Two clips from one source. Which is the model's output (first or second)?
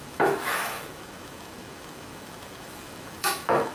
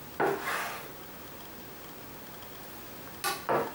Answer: first